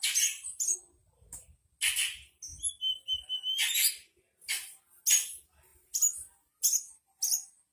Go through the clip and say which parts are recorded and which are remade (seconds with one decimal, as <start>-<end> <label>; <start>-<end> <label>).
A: 0.0-7.7 recorded